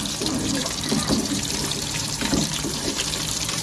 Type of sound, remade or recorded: remade